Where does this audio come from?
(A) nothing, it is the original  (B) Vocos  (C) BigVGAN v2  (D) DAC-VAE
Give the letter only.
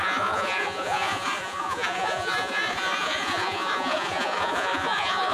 B